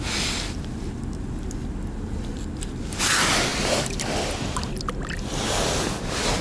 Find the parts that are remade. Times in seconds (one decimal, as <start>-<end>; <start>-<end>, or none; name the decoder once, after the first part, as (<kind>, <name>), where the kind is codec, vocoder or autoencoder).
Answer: none